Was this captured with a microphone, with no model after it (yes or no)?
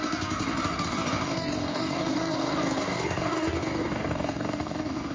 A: no